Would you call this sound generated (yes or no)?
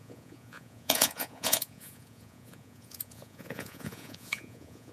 yes